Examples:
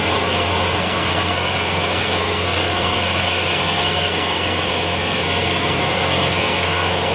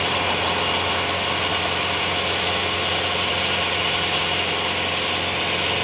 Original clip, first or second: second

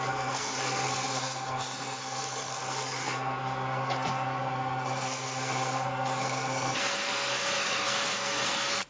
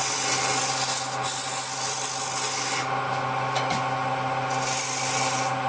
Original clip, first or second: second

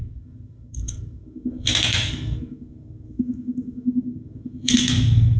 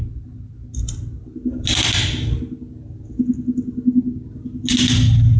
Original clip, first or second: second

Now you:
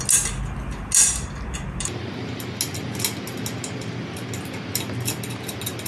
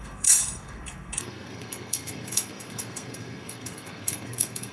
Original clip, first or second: first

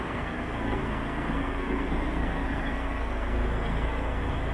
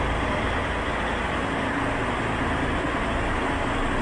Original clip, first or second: second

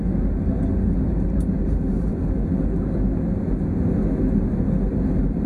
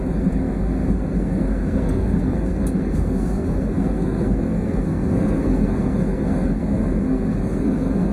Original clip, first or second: first